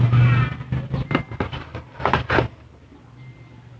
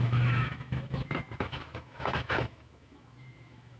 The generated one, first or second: second